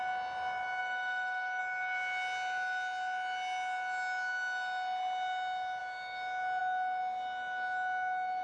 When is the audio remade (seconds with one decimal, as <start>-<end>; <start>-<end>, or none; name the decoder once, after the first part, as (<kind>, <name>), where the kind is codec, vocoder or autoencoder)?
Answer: 0.8-1.6 (autoencoder, DAC-VAE)